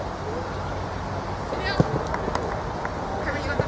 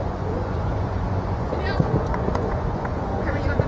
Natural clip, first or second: first